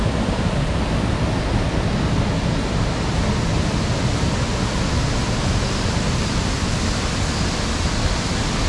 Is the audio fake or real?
real